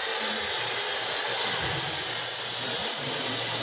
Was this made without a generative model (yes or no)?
yes